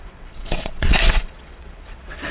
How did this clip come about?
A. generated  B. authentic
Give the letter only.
A